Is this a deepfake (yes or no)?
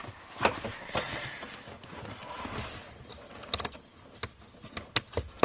no